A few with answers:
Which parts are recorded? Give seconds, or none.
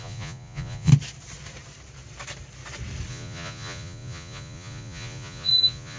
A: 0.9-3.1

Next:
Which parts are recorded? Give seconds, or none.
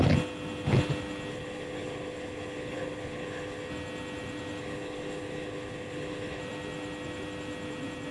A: 0.0-1.3; 3.7-4.6; 6.4-8.1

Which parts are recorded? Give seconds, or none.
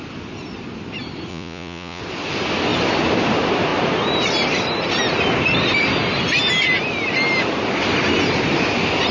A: 0.0-1.3; 2.0-9.1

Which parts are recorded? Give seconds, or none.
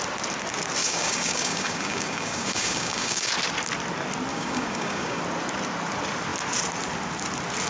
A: 0.0-0.8; 3.3-4.3; 5.2-7.7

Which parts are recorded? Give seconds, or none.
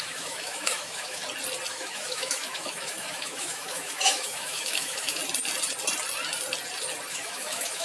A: 1.2-1.7; 5.2-7.1